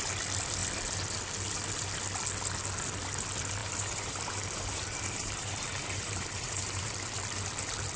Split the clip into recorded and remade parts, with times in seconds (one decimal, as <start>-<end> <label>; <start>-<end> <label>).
0.0-3.6 recorded; 3.6-7.0 remade; 7.0-8.0 recorded